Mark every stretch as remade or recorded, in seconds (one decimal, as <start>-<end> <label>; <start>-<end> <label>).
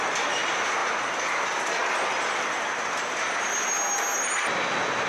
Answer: 0.0-5.1 recorded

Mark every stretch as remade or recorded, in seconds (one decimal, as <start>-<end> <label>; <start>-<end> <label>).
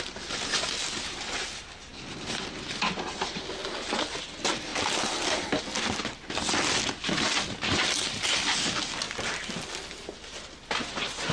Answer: 0.0-11.3 recorded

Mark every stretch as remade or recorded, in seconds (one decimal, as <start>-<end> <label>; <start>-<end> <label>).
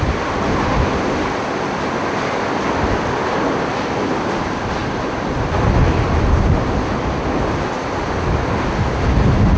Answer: 0.0-9.6 recorded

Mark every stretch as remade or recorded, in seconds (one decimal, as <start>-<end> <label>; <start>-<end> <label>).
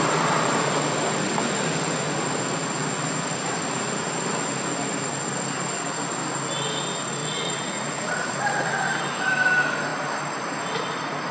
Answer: 0.0-7.2 recorded; 7.2-8.7 remade; 8.7-11.3 recorded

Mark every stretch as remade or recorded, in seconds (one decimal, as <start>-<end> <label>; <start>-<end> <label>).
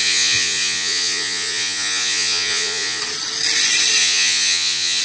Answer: 0.0-3.0 remade; 3.0-4.0 recorded; 4.0-5.0 remade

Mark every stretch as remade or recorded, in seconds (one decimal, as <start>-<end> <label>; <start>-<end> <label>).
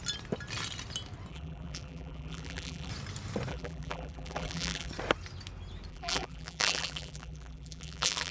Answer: 0.0-1.3 recorded; 1.3-2.9 remade; 2.9-3.5 recorded; 3.5-4.9 remade; 4.9-5.9 recorded; 5.9-8.3 remade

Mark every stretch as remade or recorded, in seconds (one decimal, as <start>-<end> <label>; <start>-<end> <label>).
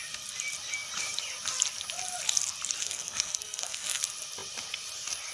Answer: 0.0-2.8 recorded; 2.8-4.0 remade; 4.0-5.3 recorded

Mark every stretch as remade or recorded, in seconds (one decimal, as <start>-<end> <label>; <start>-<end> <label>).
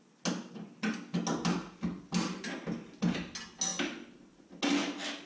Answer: 0.0-5.3 recorded